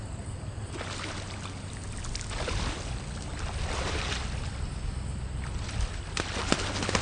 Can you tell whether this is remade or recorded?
recorded